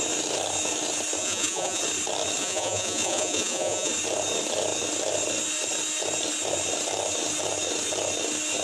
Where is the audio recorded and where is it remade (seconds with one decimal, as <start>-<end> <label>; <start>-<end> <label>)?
0.0-1.2 recorded; 1.2-1.8 remade; 1.8-2.4 recorded; 2.4-3.9 remade; 3.9-8.6 recorded